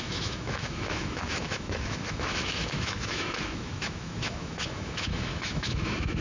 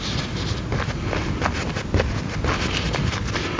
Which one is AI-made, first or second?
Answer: first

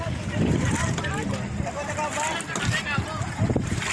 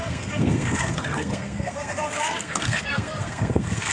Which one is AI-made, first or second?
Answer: second